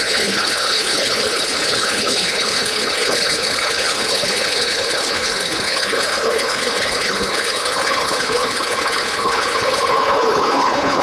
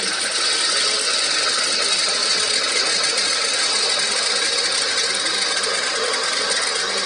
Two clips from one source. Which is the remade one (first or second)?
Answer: first